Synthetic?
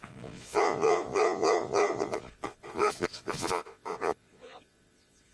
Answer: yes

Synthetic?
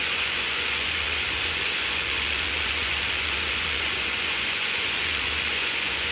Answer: yes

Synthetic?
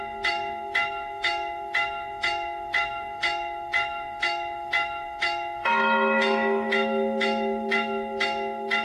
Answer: yes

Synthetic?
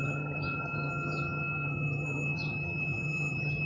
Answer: yes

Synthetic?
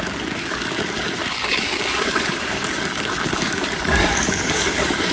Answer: yes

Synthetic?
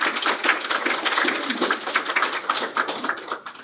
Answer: no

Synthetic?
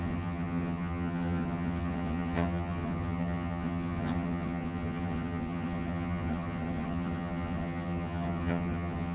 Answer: yes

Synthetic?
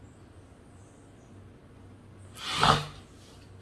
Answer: no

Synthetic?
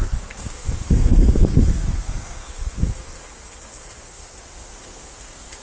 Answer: yes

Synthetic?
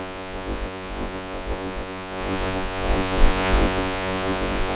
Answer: yes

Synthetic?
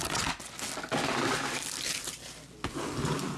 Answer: no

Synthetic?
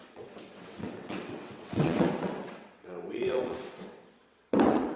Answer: yes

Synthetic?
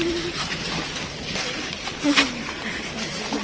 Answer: no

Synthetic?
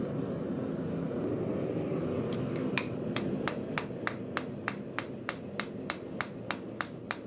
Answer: no